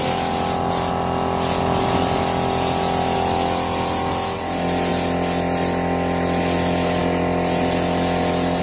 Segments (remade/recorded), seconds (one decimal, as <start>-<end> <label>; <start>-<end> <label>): 0.0-8.6 recorded